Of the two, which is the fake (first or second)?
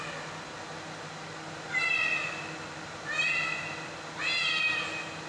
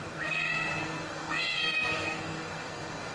second